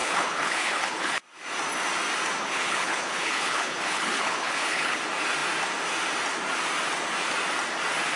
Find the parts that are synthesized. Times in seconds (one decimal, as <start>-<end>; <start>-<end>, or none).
0.0-1.2; 2.4-5.0